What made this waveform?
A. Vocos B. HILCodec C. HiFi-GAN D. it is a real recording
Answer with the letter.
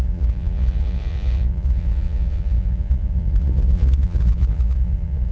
A